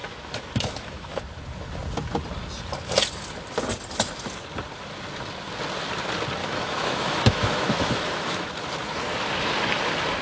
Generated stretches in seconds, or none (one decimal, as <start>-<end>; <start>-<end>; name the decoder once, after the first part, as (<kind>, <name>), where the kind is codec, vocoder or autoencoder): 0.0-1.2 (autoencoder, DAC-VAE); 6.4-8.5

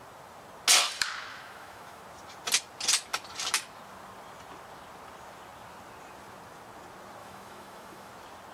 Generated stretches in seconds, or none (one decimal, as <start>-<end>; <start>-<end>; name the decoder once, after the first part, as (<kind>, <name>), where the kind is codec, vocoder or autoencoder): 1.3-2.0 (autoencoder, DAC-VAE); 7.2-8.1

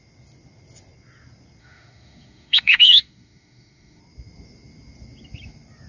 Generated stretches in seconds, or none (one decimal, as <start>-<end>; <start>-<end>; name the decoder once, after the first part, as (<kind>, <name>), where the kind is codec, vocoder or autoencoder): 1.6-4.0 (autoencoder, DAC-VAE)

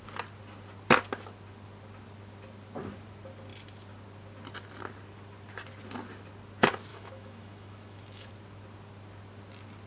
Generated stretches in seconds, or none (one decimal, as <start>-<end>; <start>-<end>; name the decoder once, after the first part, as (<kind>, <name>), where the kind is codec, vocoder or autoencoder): 6.9-8.3 (autoencoder, DAC-VAE)

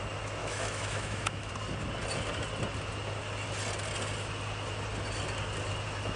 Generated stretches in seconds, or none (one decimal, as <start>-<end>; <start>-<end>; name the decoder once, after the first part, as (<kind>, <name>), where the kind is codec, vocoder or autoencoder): 0.4-1.5 (autoencoder, DAC-VAE)

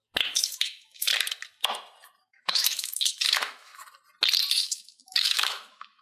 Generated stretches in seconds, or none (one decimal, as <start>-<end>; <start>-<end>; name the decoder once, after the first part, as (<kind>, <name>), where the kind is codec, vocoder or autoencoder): 0.0-1.1 (autoencoder, DAC-VAE); 2.2-3.7; 4.5-6.0

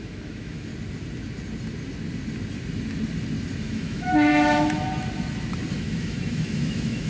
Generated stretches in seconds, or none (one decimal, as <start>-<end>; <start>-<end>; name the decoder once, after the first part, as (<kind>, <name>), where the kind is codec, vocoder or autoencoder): 0.0-0.7 (autoencoder, DAC-VAE); 3.6-4.3; 5.7-7.1

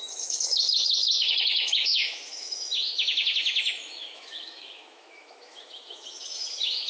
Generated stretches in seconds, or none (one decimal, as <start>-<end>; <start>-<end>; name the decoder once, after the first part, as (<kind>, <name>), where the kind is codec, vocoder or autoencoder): 0.0-6.9 (autoencoder, DAC-VAE)